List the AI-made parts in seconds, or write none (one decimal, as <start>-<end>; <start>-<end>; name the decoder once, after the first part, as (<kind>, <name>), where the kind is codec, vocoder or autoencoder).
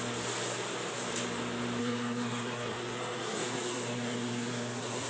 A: 1.8-5.1 (codec, SNAC)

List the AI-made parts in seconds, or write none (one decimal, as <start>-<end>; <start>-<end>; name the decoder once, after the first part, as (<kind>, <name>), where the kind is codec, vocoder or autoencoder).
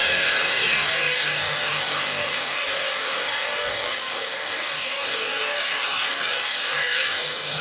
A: 0.0-7.6 (codec, DAC)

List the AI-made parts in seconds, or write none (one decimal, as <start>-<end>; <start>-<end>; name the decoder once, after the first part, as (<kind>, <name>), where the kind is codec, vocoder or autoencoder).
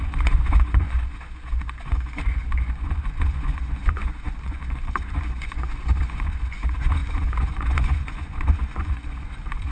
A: 0.0-9.7 (vocoder, Vocos)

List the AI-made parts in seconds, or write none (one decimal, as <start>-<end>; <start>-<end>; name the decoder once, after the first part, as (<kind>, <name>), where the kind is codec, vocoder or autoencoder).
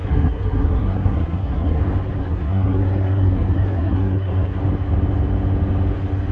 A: 0.0-1.8 (codec, SNAC); 2.2-4.6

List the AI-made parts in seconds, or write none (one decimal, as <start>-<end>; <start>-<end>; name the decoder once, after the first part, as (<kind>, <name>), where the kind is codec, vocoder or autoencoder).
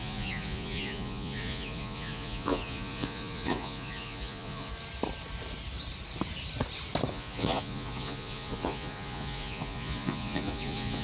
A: 0.0-4.7 (vocoder, Vocos); 7.1-11.0